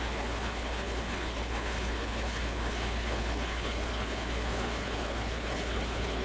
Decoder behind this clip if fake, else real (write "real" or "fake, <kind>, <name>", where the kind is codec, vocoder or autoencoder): fake, codec, HILCodec